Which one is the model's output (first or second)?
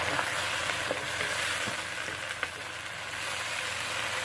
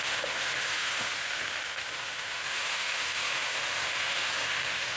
second